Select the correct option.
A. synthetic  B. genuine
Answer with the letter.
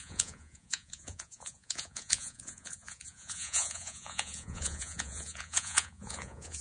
A